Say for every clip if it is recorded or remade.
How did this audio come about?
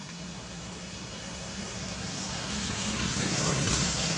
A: remade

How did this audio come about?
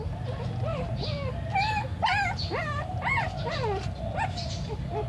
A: recorded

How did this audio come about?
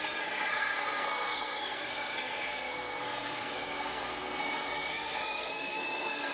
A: remade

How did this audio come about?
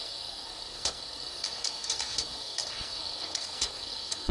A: remade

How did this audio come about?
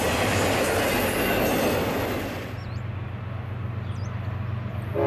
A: recorded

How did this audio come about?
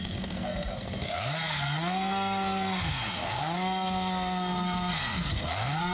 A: remade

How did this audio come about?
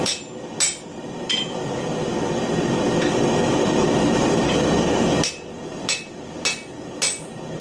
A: recorded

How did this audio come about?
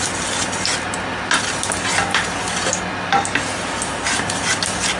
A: recorded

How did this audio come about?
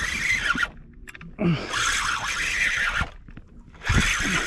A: recorded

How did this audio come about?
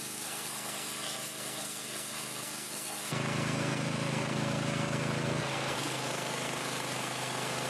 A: remade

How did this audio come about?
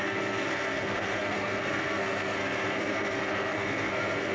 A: remade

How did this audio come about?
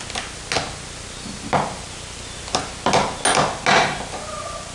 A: recorded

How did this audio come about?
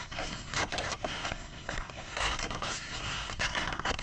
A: remade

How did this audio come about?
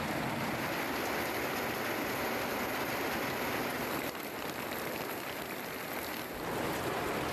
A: recorded